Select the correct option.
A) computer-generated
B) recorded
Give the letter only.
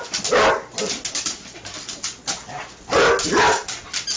B